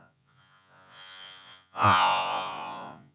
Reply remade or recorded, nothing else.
remade